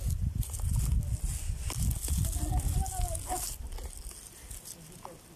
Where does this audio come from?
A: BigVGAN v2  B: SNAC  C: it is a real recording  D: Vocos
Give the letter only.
C